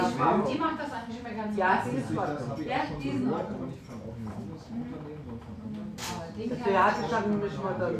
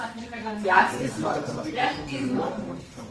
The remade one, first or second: second